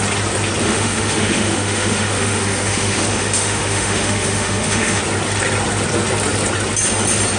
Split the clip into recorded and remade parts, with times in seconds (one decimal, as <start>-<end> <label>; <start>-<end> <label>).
0.0-0.6 recorded; 0.6-5.0 remade; 5.0-7.4 recorded